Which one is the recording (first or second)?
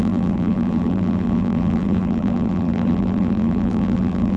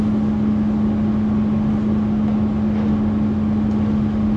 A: second